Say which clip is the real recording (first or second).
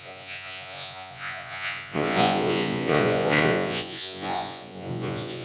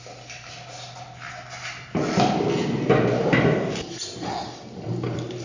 second